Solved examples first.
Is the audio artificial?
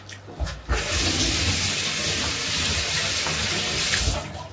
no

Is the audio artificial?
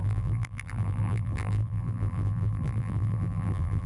yes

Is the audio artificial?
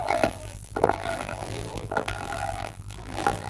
yes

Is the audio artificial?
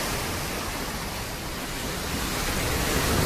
no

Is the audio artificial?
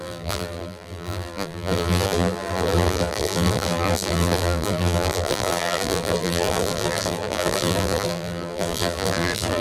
yes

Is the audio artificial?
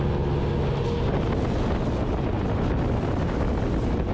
no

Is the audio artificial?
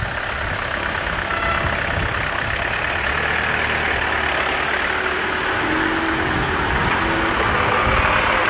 no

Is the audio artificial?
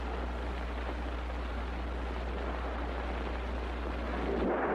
no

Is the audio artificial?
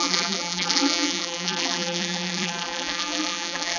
yes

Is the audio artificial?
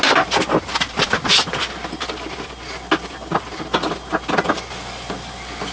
no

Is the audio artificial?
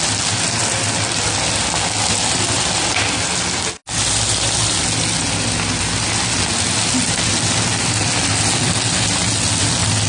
no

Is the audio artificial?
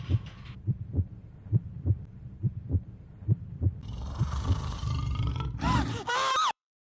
yes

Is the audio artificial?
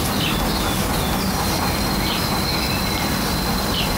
no